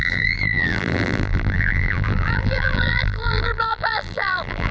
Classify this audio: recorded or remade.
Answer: remade